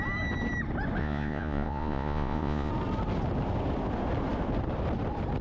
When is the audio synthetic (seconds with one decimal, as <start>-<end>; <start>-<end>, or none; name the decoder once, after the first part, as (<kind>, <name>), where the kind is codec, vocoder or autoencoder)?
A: 1.0-2.7 (vocoder, Vocos)